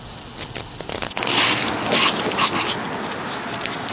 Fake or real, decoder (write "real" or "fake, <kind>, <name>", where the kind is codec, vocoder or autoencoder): real